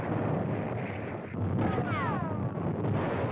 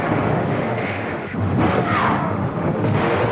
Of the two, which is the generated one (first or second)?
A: second